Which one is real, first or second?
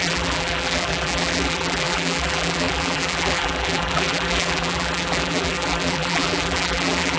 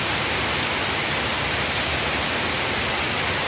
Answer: second